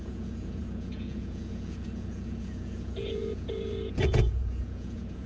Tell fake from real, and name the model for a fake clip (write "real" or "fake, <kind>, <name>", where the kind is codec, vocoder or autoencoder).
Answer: fake, vocoder, Vocos